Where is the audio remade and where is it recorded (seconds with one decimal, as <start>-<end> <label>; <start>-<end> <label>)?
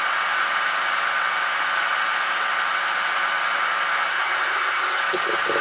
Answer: 0.0-4.1 recorded; 4.1-5.0 remade; 5.0-5.6 recorded